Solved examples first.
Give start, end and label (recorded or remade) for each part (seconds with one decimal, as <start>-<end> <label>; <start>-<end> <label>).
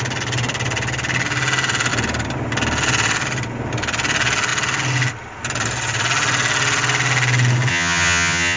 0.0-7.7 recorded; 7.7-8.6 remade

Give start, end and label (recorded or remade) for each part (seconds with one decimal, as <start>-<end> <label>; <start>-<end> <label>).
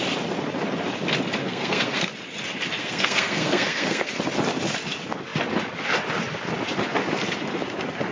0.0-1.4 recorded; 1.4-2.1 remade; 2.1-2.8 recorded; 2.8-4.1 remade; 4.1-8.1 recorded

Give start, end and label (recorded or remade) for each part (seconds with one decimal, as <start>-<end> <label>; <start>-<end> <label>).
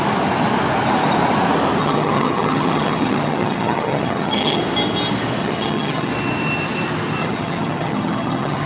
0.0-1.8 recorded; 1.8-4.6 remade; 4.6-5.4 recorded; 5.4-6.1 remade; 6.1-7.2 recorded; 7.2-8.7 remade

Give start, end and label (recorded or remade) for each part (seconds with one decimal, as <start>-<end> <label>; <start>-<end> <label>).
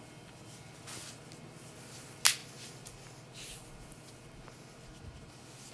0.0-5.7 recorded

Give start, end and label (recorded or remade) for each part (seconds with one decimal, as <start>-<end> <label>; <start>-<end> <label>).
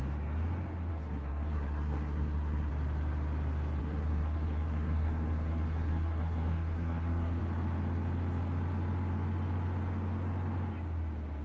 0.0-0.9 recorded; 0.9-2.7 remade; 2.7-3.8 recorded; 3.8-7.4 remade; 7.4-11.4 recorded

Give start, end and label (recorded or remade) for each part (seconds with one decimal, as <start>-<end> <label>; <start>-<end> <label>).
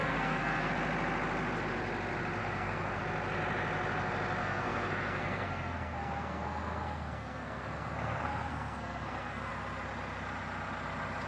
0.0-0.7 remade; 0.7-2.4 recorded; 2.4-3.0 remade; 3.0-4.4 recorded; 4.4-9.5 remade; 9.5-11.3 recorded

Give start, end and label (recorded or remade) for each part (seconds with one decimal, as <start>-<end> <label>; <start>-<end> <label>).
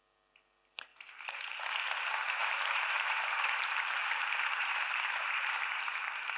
0.0-0.9 recorded; 0.9-1.4 remade; 1.4-2.4 recorded; 2.4-6.4 remade